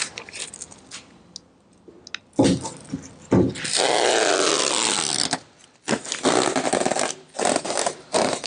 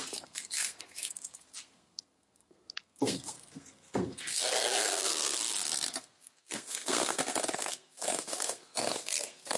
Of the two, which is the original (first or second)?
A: first